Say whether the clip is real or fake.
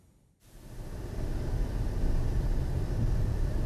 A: real